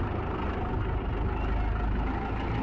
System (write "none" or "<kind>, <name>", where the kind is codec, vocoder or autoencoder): none